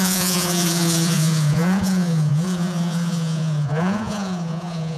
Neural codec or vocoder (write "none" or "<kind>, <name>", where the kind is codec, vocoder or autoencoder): vocoder, Vocos